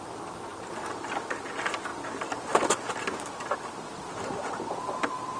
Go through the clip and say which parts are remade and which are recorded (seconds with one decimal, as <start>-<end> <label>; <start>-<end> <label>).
0.0-5.4 recorded